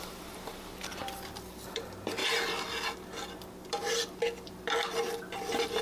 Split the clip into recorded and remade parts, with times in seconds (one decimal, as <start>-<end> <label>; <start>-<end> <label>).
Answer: 0.0-2.2 remade; 2.2-5.8 recorded